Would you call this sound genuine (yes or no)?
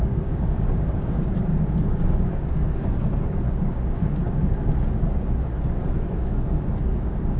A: no